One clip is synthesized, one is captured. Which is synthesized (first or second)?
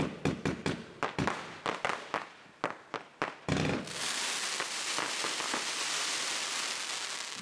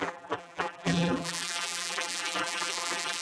second